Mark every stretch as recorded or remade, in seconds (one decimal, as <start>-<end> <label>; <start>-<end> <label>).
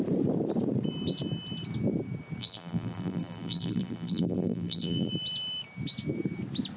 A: 0.0-2.4 recorded; 2.4-5.1 remade; 5.1-6.8 recorded